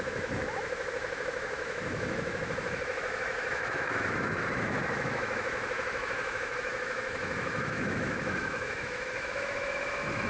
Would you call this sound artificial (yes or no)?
yes